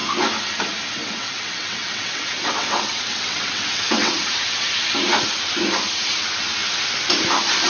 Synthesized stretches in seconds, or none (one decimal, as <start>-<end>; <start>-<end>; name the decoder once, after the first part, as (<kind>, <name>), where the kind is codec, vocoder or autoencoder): 1.0-4.7 (vocoder, WaveNeXt)